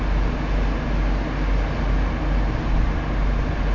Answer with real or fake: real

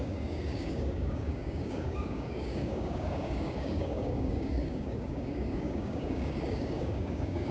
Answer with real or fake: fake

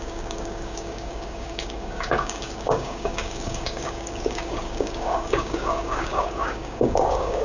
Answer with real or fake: fake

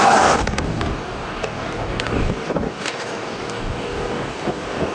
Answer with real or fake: fake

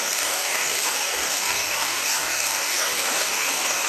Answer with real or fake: fake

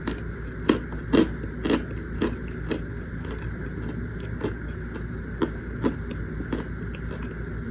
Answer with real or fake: real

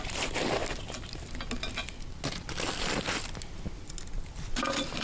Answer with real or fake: real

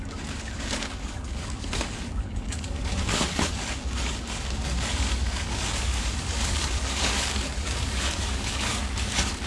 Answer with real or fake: fake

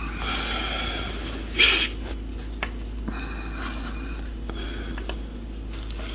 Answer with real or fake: real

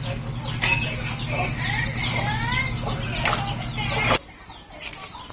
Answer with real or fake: real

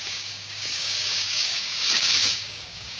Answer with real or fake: fake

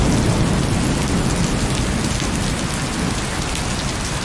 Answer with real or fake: real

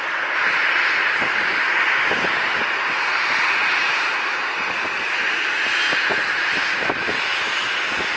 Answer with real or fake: real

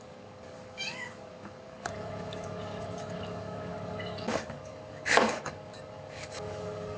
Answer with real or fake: fake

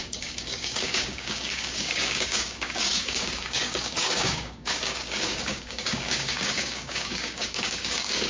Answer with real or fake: fake